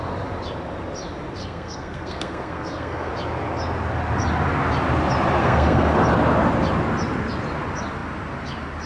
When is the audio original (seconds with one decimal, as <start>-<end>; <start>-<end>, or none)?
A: 0.0-1.4; 3.1-5.4; 6.0-8.9

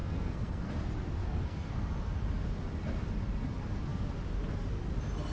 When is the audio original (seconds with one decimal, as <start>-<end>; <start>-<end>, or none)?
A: 0.7-1.2; 1.9-5.3

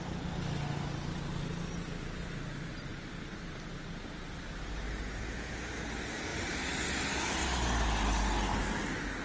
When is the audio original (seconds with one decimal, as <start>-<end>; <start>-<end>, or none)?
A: 0.0-9.2

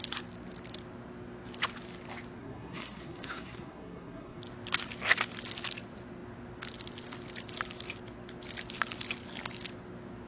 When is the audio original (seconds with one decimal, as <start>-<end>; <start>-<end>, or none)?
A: 0.0-2.4; 4.4-10.3